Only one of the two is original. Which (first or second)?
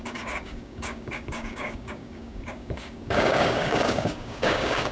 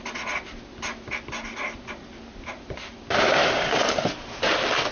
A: second